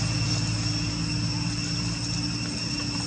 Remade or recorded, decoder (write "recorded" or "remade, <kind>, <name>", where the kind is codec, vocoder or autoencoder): recorded